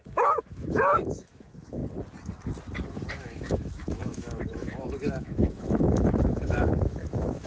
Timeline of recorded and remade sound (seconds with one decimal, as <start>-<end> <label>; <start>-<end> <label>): 0.0-1.8 remade; 1.8-3.2 recorded; 3.2-7.5 remade